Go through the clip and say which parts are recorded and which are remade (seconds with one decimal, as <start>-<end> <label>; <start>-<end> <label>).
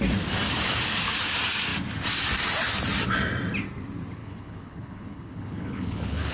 0.0-4.2 recorded; 4.2-6.3 remade